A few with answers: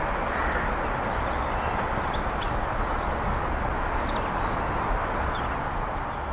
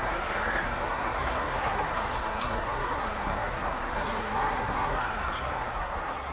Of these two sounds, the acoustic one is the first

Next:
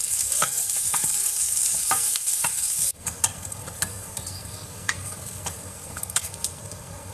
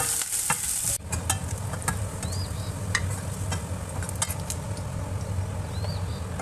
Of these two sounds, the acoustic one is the second